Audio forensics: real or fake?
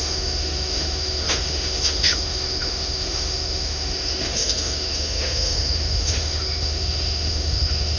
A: fake